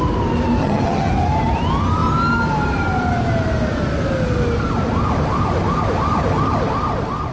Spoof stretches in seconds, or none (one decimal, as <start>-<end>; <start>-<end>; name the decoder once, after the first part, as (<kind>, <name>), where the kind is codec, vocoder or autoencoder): 0.6-1.1 (vocoder, HiFi-GAN)